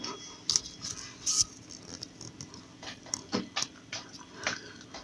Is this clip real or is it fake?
real